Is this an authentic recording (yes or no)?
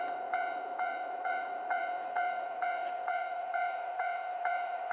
no